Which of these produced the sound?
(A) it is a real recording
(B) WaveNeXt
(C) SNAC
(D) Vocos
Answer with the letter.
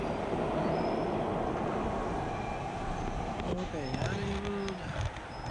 A